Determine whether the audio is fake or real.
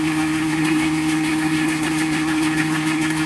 fake